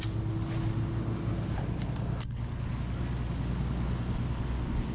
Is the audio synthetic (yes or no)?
no